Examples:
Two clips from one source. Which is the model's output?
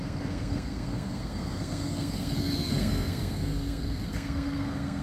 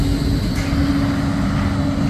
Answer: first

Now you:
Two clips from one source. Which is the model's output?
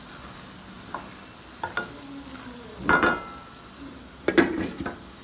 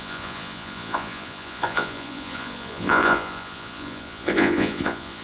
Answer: second